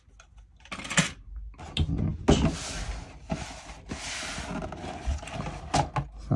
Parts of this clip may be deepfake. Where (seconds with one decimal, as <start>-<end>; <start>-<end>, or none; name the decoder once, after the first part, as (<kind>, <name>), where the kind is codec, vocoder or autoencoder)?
none